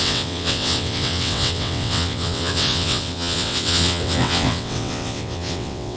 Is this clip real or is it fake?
fake